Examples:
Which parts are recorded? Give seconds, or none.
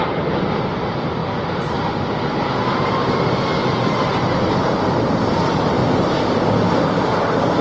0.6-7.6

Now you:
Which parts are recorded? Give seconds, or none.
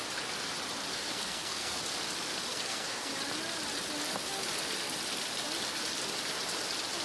0.0-0.9; 1.8-2.5; 3.1-7.0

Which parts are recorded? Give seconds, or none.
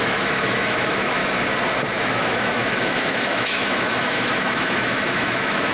1.2-2.0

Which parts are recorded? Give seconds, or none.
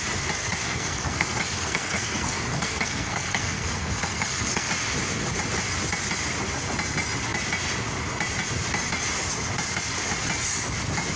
0.0-0.4; 4.7-11.2